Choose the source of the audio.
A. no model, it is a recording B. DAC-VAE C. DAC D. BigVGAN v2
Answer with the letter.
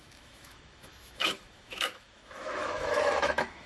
B